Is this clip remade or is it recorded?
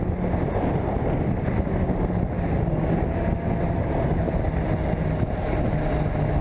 recorded